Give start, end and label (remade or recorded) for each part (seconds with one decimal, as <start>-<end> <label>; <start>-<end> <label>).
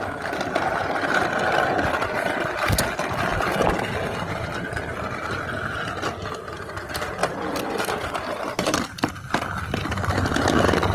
0.0-10.9 recorded